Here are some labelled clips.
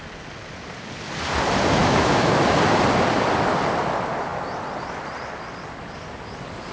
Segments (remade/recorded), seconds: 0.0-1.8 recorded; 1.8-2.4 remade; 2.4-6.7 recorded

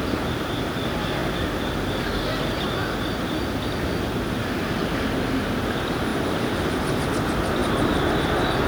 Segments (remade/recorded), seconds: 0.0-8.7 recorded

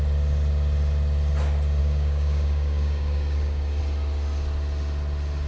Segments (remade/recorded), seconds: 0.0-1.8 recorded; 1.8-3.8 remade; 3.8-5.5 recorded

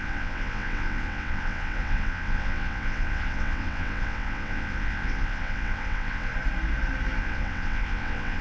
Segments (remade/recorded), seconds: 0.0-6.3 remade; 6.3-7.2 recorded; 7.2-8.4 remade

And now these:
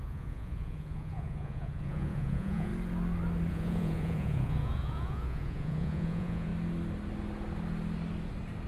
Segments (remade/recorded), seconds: 0.0-2.7 remade; 2.7-3.5 recorded; 3.5-6.5 remade; 6.5-8.7 recorded

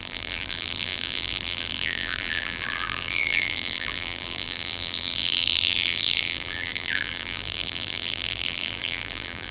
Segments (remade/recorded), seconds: 0.0-9.5 remade

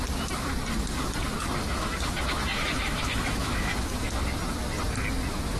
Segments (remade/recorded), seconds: 0.0-1.6 recorded; 1.6-4.1 remade; 4.1-5.6 recorded

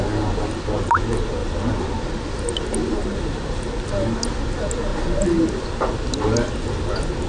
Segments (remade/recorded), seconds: 0.0-3.0 recorded; 3.0-3.5 remade; 3.5-7.3 recorded